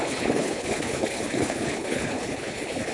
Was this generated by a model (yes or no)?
yes